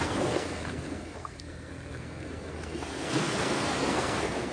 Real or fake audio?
fake